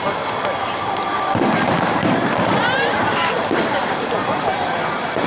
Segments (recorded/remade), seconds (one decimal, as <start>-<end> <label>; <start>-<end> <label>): 0.0-0.6 recorded; 0.6-3.3 remade; 3.3-3.8 recorded; 3.8-4.4 remade; 4.4-5.3 recorded